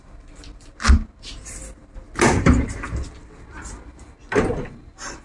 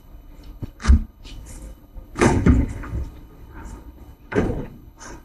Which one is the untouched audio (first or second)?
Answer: first